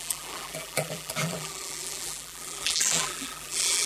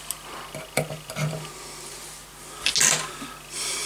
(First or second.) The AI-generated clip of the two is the first